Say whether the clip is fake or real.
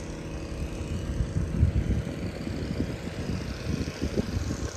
real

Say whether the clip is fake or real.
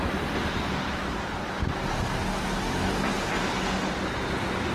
real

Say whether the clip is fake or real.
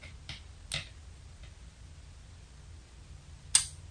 real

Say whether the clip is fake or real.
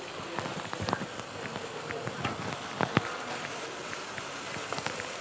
real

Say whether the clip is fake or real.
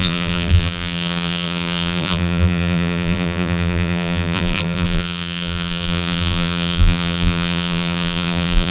fake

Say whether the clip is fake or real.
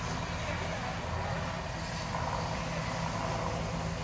real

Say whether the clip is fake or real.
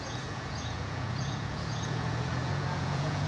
fake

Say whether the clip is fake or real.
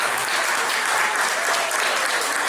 real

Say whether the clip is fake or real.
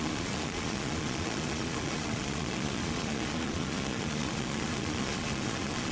fake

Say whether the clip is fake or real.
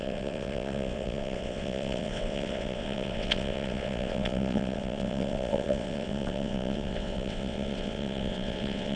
fake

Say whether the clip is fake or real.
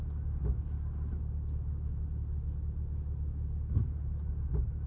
real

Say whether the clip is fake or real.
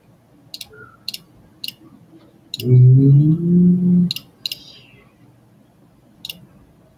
real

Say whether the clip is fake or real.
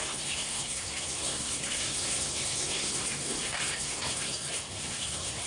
fake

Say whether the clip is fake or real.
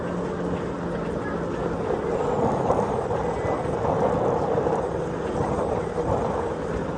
real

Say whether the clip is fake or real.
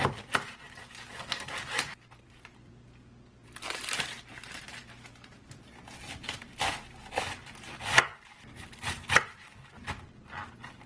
real